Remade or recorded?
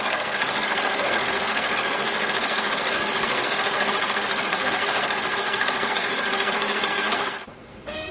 remade